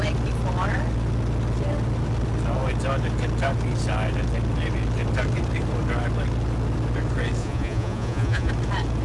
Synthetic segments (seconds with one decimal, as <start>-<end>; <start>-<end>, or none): 7.4-8.5